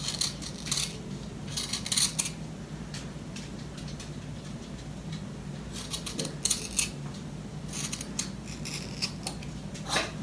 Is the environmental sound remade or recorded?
recorded